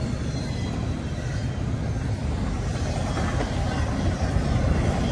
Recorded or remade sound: remade